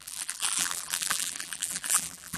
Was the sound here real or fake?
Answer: fake